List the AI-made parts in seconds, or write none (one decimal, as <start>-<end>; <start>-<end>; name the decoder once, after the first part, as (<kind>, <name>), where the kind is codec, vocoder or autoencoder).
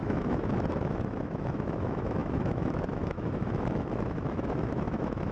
0.0-5.3 (autoencoder, DAC-VAE)